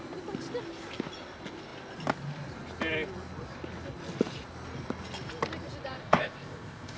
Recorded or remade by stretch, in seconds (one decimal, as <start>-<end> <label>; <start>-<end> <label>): 0.0-6.0 recorded; 6.0-7.0 remade